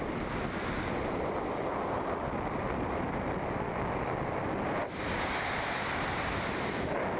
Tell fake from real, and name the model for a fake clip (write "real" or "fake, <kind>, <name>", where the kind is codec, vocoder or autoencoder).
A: real